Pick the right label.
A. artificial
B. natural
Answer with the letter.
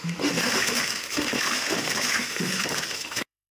A